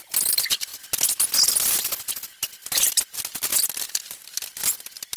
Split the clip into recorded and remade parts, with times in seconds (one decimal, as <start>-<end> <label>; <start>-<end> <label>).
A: 0.0-5.2 recorded